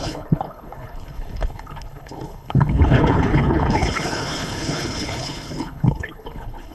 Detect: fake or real fake